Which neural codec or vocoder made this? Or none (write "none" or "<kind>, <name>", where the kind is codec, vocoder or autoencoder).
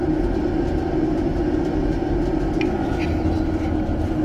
none